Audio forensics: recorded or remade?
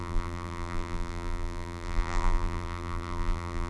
remade